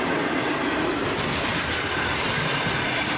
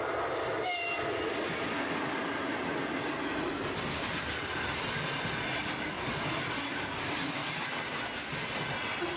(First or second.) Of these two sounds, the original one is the second